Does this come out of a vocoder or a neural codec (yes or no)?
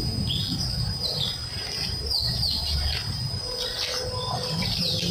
no